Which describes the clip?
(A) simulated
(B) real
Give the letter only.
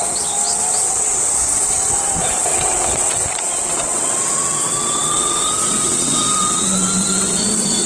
A